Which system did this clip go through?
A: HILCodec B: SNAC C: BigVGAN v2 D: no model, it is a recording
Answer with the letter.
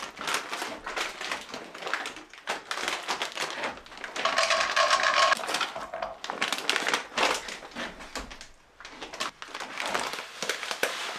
D